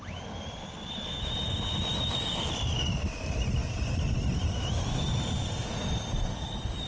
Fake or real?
real